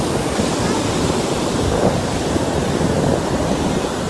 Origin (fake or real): fake